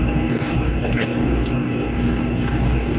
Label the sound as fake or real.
fake